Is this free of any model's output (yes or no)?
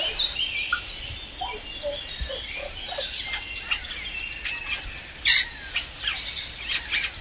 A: yes